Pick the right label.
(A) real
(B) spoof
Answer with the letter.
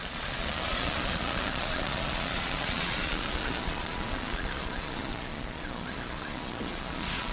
B